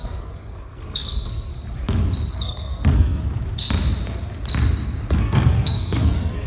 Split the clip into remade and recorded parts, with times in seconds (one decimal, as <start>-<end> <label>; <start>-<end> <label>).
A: 0.0-1.5 remade; 1.5-2.3 recorded; 2.3-3.2 remade; 3.2-5.1 recorded; 5.1-6.5 remade